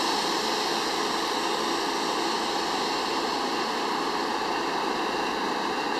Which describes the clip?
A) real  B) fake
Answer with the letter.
A